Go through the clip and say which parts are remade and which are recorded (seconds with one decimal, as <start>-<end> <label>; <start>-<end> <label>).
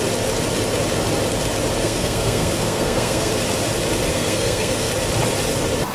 0.0-1.8 recorded; 1.8-3.3 remade; 3.3-4.1 recorded; 4.1-4.9 remade; 4.9-5.9 recorded